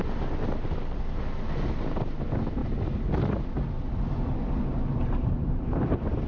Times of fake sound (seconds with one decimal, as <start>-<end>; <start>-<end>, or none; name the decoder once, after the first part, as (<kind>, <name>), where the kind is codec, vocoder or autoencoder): 2.6-5.8 (vocoder, BigVGAN v2)